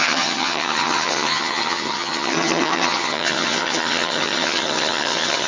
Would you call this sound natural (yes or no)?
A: no